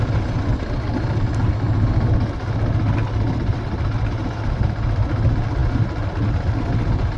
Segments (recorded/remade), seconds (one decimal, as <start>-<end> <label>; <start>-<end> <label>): 0.0-7.2 recorded